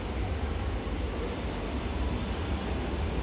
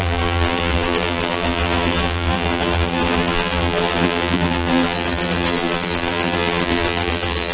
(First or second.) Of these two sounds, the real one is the first